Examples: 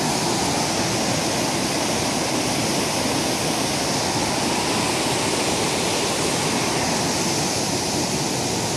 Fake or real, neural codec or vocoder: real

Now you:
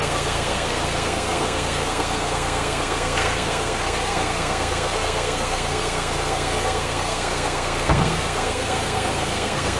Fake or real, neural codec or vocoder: fake, codec, SNAC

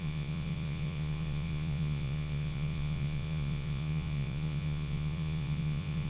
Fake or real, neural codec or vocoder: fake, vocoder, Vocos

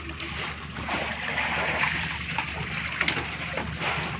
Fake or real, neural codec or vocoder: real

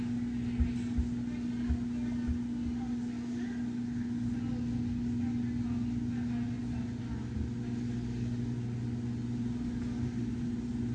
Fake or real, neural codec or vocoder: real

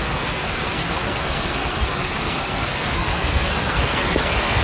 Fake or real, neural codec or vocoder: fake, codec, SNAC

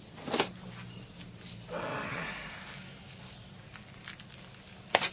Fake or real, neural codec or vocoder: real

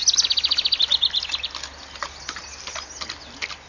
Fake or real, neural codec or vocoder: real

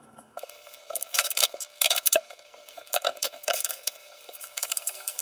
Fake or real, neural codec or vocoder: fake, codec, SNAC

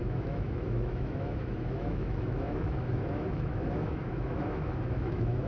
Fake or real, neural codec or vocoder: fake, autoencoder, DAC-VAE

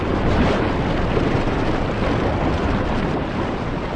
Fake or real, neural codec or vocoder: real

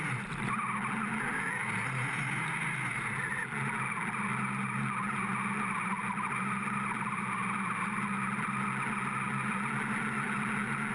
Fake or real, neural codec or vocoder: real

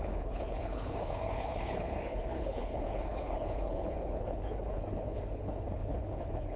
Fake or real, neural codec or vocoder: fake, codec, HILCodec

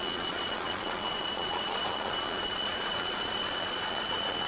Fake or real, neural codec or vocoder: fake, vocoder, Vocos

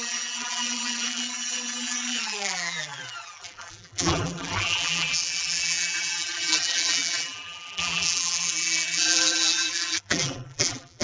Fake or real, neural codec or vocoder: fake, vocoder, BigVGAN v2